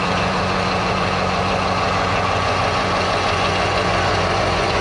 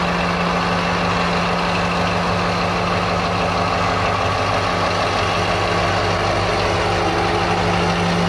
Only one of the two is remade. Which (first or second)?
first